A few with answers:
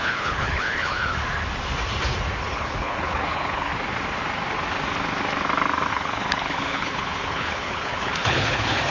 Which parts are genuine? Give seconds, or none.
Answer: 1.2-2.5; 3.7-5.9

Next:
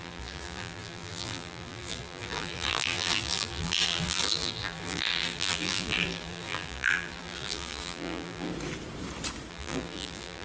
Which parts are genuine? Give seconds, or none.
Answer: 8.5-9.5